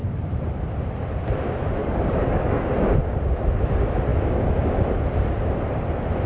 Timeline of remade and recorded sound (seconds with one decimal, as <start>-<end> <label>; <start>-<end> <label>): 0.0-1.8 recorded; 1.8-2.7 remade; 2.7-6.3 recorded